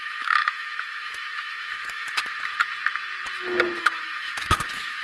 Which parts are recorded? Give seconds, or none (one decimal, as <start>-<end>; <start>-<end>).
2.3-3.8